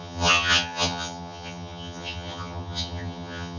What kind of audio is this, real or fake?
fake